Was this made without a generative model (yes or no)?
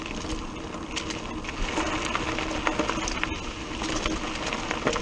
yes